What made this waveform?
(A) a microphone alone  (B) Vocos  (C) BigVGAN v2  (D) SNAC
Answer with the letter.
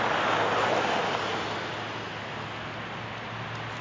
A